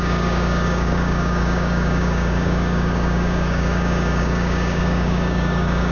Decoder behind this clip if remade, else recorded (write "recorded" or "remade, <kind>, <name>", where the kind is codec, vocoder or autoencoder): remade, codec, DAC